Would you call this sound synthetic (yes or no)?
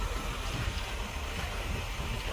yes